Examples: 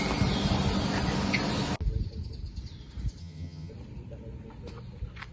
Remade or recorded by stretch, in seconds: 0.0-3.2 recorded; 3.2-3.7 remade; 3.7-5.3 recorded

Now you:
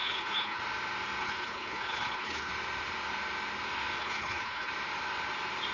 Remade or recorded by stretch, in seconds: 0.0-0.6 remade; 0.6-1.2 recorded; 1.2-2.5 remade; 2.5-4.0 recorded; 4.0-4.7 remade; 4.7-5.7 recorded

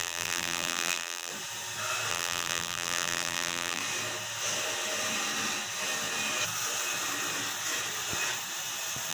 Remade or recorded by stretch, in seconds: 0.0-1.3 remade; 1.3-2.1 recorded; 2.1-3.8 remade; 3.8-9.1 recorded